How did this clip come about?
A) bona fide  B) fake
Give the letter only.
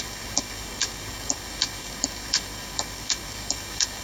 B